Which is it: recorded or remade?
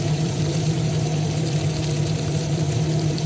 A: remade